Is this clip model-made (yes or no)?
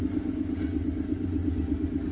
no